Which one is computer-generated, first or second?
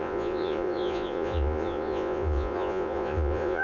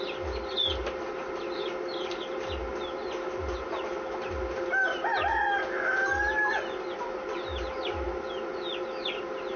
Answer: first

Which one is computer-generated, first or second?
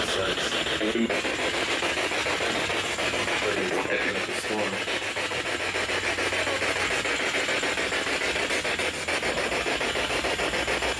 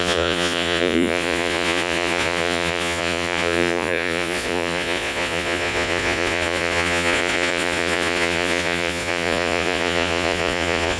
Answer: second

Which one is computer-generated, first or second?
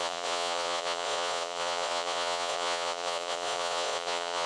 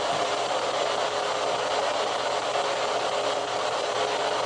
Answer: first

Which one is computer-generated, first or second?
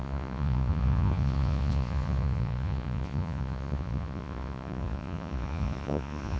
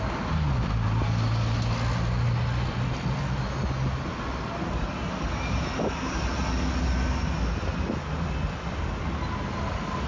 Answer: first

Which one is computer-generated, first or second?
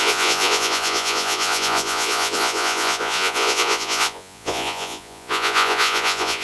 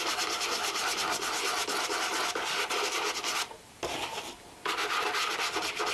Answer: first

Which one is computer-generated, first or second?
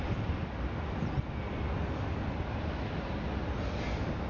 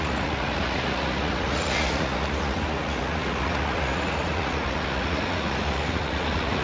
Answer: second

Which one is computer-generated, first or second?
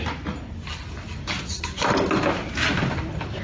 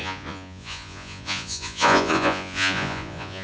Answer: second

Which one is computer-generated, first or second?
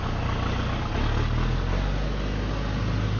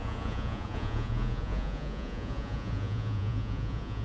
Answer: second